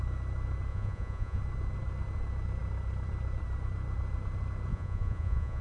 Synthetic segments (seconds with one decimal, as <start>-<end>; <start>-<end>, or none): 0.7-1.4; 4.7-5.6